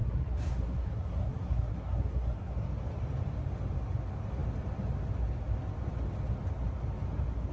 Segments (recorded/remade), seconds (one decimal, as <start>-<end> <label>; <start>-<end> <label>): 0.0-2.7 remade; 2.7-7.5 recorded